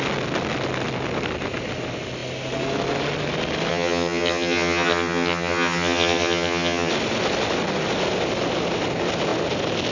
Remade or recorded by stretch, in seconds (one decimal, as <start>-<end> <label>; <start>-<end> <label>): 0.0-3.7 recorded; 3.7-6.9 remade; 6.9-9.9 recorded